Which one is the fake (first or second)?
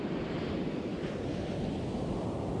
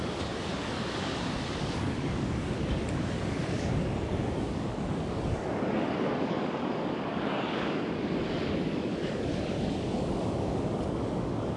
second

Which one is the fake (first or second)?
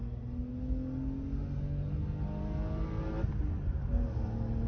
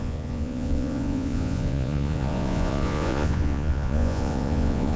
second